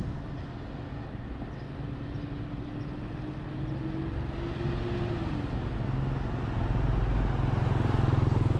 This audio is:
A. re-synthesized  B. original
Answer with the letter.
B